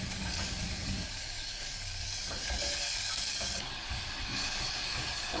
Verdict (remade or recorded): remade